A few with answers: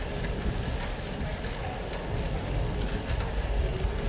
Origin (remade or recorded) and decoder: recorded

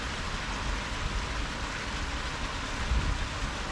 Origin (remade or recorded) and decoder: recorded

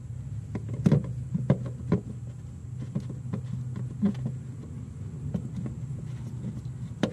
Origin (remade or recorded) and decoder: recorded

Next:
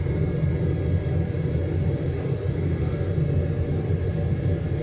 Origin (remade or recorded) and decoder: recorded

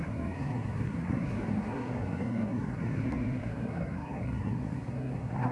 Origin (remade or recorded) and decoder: remade, codec, SNAC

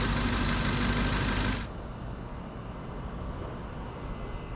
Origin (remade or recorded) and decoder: recorded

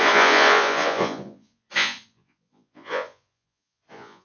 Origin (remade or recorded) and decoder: remade, vocoder, Vocos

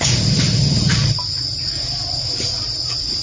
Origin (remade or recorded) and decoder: recorded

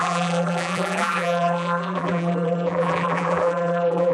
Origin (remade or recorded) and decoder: remade, vocoder, BigVGAN v2